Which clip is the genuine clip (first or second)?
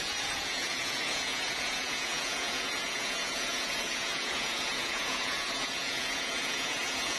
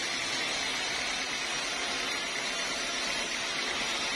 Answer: second